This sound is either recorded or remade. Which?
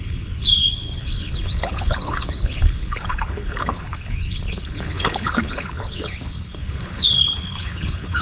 remade